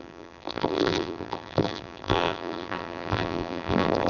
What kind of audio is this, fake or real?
fake